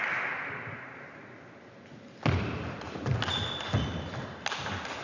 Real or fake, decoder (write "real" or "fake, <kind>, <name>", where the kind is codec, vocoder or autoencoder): real